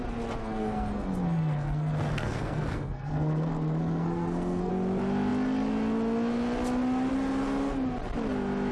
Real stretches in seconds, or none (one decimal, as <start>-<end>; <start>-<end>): 0.0-0.4; 4.7-8.7